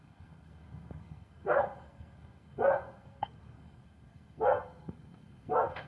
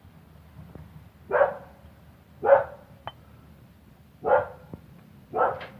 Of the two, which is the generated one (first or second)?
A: first